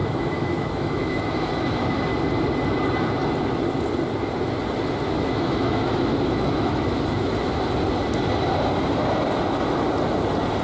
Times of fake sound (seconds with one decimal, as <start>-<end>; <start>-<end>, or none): 0.0-1.9; 5.2-7.5